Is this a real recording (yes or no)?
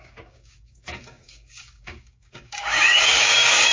no